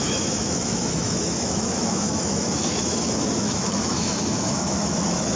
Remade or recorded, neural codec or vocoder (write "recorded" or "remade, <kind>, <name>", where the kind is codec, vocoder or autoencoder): remade, autoencoder, DAC-VAE